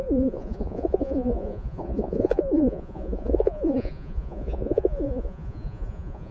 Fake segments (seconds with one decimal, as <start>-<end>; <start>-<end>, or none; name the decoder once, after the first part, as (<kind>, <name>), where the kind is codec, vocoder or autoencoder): 0.0-6.3 (vocoder, Vocos)